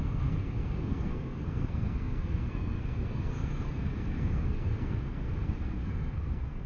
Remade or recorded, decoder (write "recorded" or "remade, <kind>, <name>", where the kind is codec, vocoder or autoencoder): remade, codec, SNAC